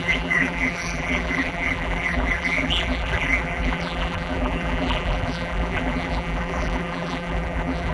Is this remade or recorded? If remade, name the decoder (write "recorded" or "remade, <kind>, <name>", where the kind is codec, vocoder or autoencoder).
remade, vocoder, BigVGAN v2